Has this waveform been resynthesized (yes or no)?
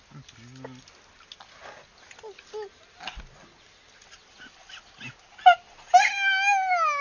no